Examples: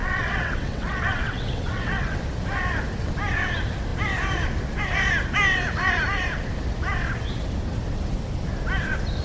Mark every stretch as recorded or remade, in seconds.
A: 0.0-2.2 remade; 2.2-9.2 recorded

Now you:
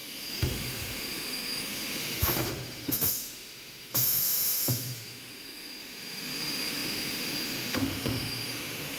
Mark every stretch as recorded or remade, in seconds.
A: 0.0-9.0 remade

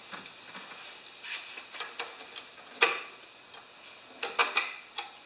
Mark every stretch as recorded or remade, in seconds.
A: 0.0-5.3 recorded

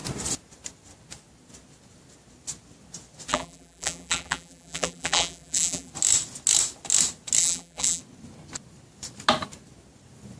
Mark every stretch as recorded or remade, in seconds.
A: 0.0-3.3 recorded; 3.3-5.9 remade; 5.9-7.4 recorded; 7.4-8.0 remade; 8.0-10.4 recorded

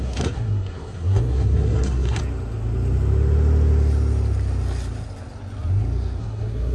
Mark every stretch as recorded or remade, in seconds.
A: 0.0-2.2 remade; 2.2-6.2 recorded; 6.2-6.7 remade

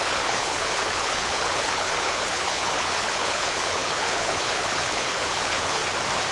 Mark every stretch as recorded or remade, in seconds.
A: 0.0-5.8 remade; 5.8-6.3 recorded